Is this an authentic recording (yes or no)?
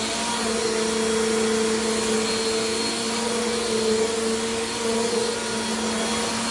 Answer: yes